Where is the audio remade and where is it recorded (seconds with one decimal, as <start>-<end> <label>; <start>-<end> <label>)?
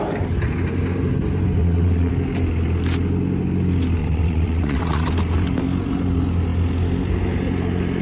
0.0-1.6 recorded; 1.6-2.1 remade; 2.1-4.0 recorded; 4.0-5.1 remade; 5.1-8.0 recorded